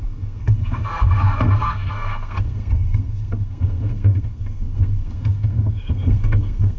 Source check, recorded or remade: remade